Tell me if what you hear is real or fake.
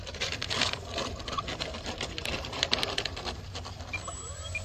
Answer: fake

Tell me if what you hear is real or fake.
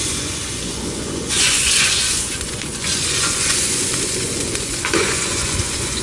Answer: fake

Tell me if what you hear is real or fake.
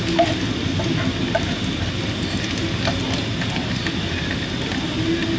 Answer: real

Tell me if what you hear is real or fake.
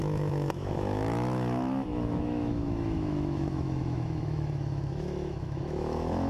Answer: fake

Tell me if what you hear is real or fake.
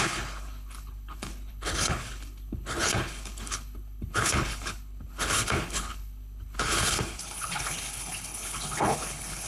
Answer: fake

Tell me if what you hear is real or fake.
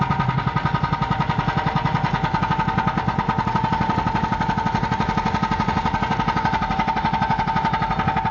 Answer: real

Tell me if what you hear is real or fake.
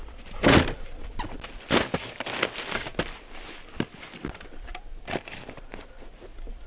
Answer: real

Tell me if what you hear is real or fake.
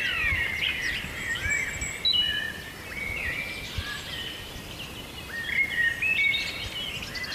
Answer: real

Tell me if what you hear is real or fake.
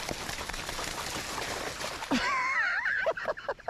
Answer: real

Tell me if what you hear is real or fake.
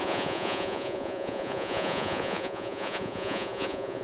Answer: fake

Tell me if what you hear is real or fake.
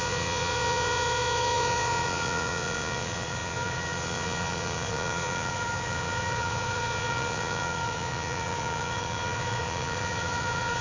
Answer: fake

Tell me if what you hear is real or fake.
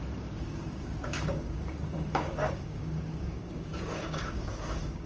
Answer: fake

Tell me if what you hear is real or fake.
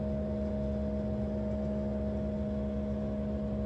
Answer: real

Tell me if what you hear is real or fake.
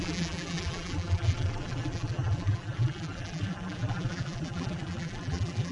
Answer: fake